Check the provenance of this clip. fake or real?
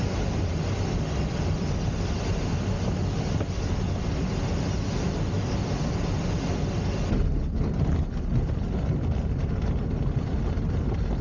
real